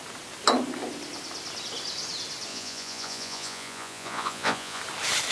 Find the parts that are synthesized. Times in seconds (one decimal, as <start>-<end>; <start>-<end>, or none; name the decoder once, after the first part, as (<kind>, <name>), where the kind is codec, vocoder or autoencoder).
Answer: 2.5-4.8 (vocoder, Vocos)